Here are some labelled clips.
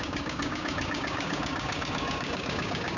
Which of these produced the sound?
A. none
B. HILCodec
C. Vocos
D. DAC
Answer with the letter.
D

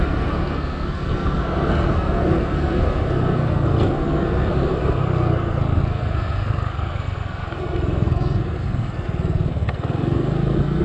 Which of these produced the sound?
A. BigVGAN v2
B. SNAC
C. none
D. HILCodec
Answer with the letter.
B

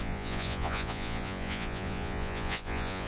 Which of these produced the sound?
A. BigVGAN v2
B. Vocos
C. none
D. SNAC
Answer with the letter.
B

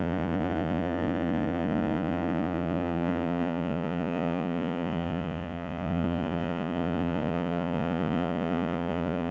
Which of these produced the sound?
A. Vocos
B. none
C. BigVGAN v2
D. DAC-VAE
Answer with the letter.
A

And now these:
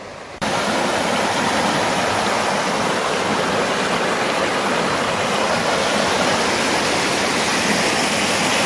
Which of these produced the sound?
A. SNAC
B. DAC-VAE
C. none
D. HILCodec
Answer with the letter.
C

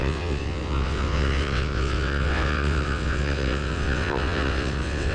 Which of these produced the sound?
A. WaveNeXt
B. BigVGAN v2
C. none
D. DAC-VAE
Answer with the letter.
A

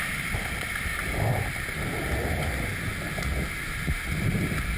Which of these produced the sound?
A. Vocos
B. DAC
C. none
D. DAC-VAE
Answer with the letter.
C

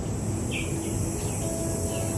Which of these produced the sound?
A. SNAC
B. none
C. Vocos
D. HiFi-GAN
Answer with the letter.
B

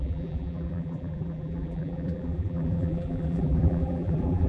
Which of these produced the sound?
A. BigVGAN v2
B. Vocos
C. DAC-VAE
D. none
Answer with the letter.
A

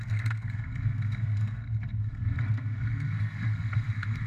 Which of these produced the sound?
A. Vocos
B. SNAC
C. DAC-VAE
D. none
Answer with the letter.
B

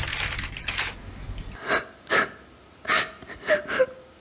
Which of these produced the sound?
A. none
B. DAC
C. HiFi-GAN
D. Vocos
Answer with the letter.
A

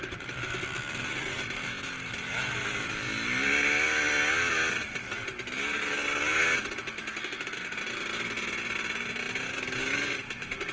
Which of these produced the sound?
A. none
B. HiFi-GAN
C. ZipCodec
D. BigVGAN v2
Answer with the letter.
A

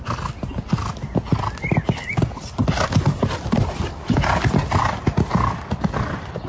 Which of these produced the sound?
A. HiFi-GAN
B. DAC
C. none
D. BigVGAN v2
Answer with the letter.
C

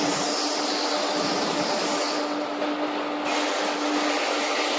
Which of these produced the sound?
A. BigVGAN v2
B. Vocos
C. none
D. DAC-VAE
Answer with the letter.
C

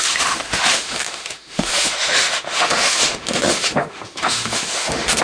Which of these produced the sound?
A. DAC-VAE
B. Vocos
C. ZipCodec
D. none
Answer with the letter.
A